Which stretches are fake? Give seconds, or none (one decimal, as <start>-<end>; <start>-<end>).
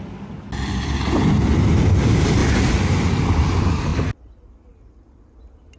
none